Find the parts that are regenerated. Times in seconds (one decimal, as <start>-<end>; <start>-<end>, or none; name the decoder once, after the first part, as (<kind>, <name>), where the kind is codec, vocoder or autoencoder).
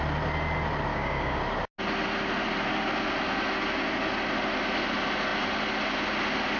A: 0.9-1.4 (codec, DAC)